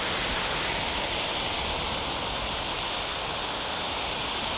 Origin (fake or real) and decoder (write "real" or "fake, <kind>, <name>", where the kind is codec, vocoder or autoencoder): real